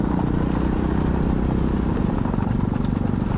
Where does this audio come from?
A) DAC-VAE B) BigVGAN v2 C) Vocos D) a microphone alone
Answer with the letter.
D